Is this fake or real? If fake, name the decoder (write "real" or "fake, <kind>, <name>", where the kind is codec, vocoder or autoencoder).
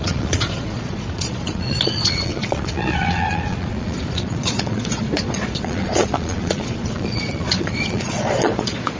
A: fake, vocoder, Vocos